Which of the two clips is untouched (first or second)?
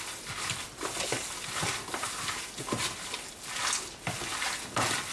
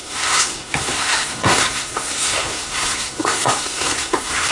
first